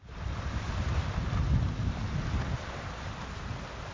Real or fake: real